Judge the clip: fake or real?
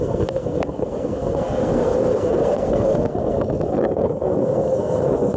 fake